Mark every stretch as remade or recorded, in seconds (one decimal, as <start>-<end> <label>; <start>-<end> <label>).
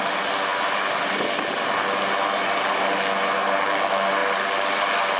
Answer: 0.0-5.2 recorded